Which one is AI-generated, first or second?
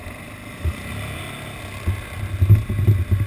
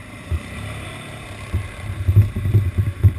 second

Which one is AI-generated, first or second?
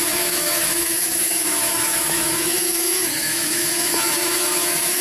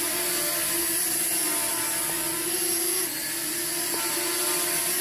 first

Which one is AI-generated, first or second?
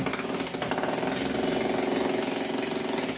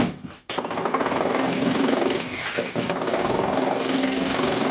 second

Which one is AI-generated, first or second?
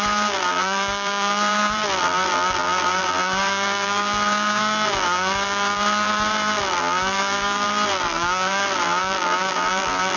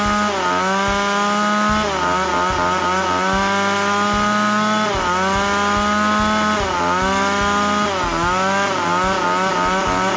first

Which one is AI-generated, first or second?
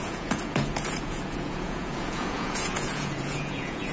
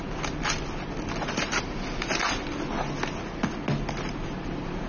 first